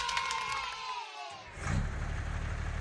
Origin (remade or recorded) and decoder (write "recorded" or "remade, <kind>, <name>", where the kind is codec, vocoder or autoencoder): recorded